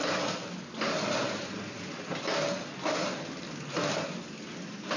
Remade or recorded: recorded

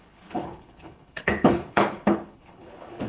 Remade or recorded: remade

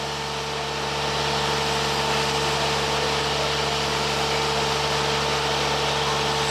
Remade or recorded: recorded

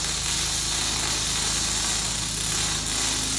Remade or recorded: recorded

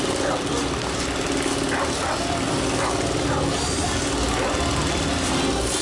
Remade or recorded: recorded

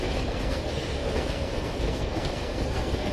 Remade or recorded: remade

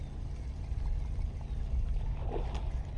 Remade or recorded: recorded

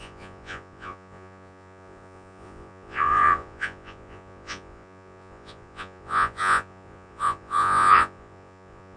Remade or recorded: remade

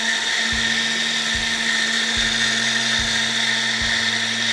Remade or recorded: recorded